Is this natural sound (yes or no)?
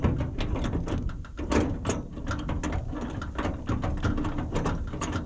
yes